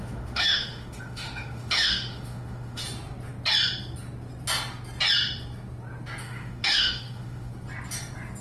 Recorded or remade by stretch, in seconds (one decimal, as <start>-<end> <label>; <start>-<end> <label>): 0.0-2.8 remade; 2.8-6.2 recorded; 6.2-7.5 remade; 7.5-8.4 recorded